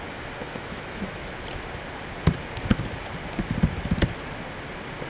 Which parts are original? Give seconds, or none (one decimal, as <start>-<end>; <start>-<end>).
0.0-0.4; 1.3-5.1